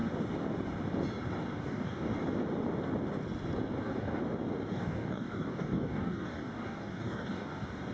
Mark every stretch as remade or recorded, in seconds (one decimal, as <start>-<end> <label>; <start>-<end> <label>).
0.0-1.6 recorded; 1.6-2.1 remade; 2.1-3.8 recorded; 3.8-4.2 remade; 4.2-4.7 recorded; 4.7-7.9 remade